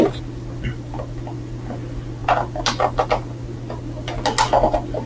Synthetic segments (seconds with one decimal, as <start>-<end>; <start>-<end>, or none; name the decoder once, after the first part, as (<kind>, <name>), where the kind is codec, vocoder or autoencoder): none